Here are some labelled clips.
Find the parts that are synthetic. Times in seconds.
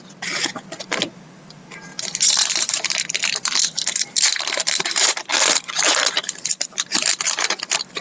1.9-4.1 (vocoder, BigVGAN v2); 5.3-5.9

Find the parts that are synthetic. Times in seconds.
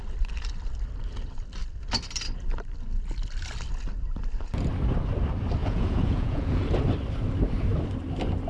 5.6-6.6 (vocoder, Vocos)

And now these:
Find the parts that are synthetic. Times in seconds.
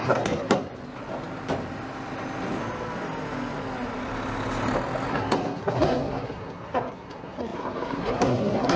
0.0-0.7 (codec, SNAC); 5.1-8.8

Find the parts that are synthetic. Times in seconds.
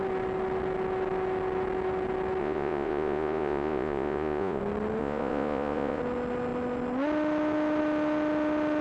2.4-4.6 (vocoder, Vocos); 5.0-6.0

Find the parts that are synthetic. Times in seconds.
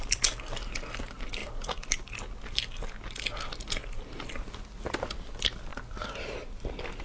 none